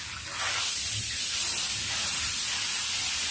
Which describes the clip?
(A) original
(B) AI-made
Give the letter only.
A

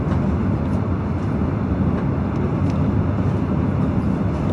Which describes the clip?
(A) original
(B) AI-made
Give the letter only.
A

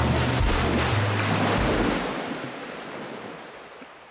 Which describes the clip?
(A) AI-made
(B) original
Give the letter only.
B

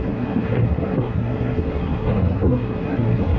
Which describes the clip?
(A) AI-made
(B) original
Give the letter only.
A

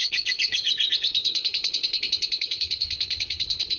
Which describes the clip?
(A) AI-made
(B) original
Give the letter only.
A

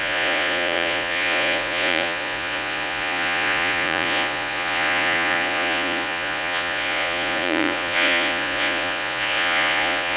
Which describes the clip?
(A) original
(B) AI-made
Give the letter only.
B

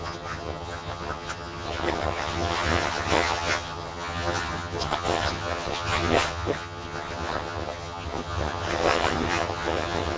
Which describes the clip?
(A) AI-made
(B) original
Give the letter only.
A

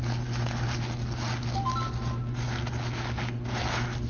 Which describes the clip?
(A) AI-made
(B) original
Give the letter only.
B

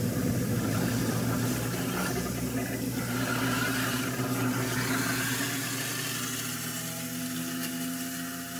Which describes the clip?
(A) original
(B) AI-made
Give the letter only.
A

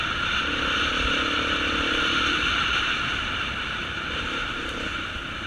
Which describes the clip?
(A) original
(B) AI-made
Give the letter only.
B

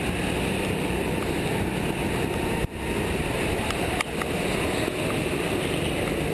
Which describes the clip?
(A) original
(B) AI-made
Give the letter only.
A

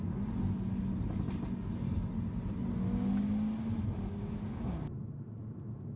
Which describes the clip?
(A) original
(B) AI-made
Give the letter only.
A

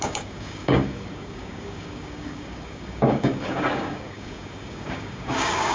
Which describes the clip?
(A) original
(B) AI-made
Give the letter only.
B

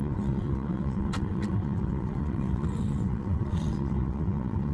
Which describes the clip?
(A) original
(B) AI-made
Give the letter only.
B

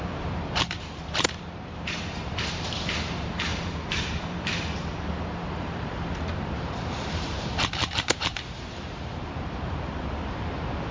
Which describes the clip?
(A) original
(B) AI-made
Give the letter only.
B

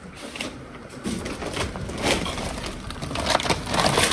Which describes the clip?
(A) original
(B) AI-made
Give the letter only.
B